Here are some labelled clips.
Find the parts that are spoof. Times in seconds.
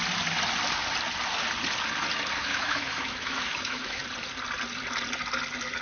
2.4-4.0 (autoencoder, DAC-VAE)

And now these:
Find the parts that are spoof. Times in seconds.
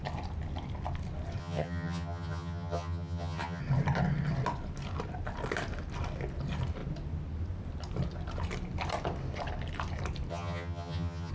1.4-3.6 (vocoder, HiFi-GAN); 10.3-11.3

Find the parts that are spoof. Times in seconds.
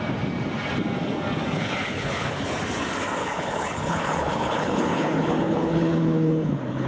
1.6-2.6 (codec, HILCodec); 3.2-6.9